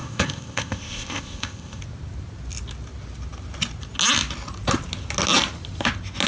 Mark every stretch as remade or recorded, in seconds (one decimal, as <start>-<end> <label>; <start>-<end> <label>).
0.0-1.8 remade; 1.8-6.3 recorded